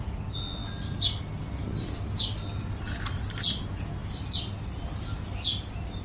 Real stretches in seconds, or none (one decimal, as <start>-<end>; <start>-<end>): 0.0-6.0